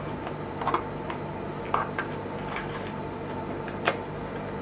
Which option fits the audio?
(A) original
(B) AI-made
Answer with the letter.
A